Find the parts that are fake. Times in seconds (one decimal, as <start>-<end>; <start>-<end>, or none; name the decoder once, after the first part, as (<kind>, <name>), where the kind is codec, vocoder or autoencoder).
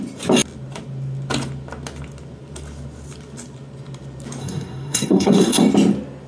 4.4-5.6 (codec, SNAC)